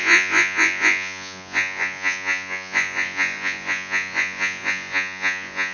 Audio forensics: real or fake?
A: fake